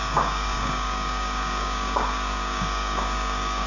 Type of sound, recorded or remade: remade